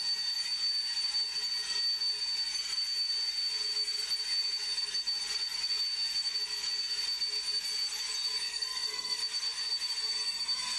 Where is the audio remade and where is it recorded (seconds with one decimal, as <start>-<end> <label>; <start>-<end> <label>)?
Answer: 0.0-8.5 recorded; 8.5-9.2 remade; 9.2-10.8 recorded